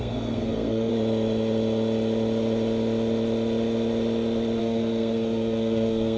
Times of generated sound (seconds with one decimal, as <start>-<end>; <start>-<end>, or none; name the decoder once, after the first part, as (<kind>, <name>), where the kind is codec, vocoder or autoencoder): 0.0-0.9 (codec, SNAC); 4.6-6.2